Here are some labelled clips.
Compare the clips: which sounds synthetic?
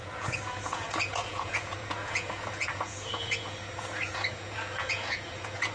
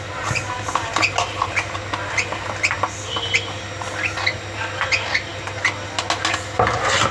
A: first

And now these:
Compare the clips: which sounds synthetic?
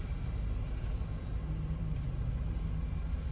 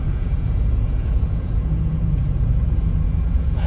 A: second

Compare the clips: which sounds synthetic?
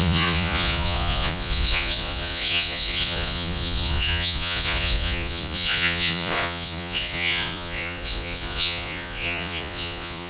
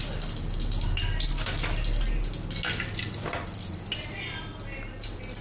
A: first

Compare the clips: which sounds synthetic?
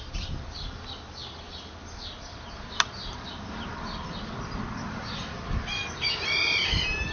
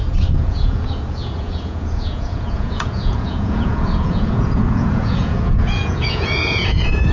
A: second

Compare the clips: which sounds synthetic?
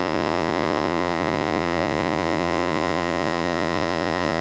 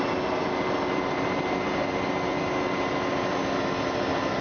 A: first